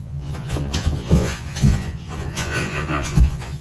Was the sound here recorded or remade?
remade